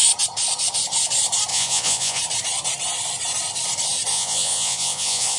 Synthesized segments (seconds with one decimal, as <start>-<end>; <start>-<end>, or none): 1.5-2.2; 4.1-5.4